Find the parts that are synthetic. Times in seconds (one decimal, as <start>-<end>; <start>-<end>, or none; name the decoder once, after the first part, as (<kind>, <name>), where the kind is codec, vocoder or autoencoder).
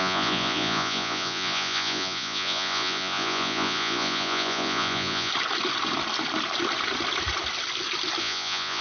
0.0-5.3 (vocoder, Vocos); 8.2-8.8